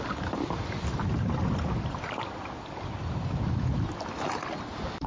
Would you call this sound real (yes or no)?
yes